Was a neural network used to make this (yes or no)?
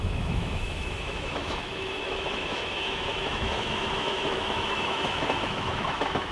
yes